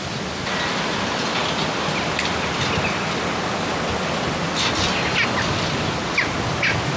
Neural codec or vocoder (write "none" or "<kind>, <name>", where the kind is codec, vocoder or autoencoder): none